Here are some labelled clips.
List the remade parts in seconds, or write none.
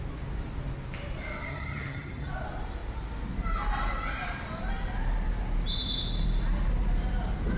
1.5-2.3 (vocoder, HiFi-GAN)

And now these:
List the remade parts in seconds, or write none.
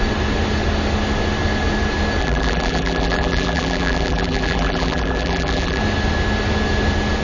2.2-5.8 (vocoder, BigVGAN v2)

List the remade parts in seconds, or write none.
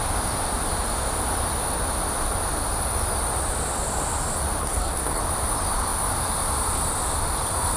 4.6-5.2 (codec, SNAC)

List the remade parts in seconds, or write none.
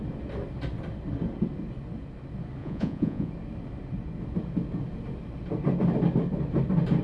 2.6-3.3 (vocoder, Vocos)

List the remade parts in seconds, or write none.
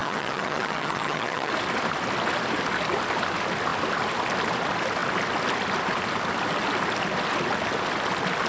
0.0-1.5 (vocoder, HiFi-GAN)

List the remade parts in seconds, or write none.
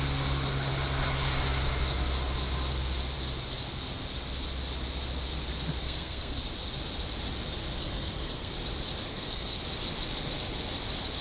5.8-6.4 (codec, SNAC); 7.8-8.6; 9.1-9.6